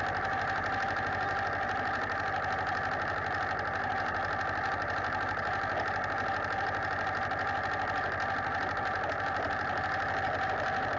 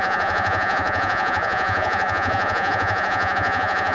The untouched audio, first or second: first